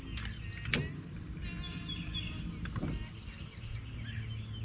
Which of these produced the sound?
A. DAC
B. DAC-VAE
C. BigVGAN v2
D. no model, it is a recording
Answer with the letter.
D